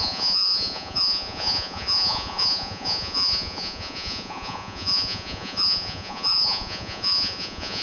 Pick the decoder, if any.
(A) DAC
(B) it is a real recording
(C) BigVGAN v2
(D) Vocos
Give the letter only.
D